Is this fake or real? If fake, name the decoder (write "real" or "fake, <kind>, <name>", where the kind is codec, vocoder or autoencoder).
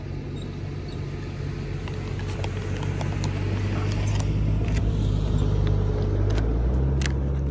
real